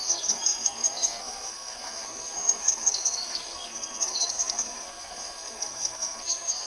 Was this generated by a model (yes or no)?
yes